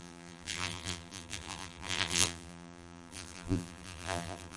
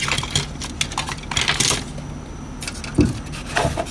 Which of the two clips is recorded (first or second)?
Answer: second